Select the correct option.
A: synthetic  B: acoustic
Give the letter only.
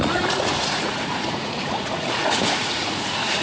A